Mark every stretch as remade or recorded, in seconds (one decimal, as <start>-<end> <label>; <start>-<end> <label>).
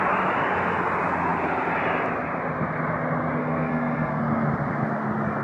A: 0.0-3.4 recorded; 3.4-4.2 remade; 4.2-5.4 recorded